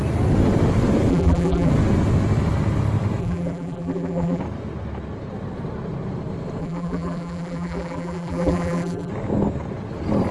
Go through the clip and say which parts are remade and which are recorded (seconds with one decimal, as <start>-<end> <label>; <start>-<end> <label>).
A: 0.0-1.1 recorded; 1.1-1.7 remade; 1.7-3.2 recorded; 3.2-4.4 remade; 4.4-6.6 recorded; 6.6-9.1 remade; 9.1-10.3 recorded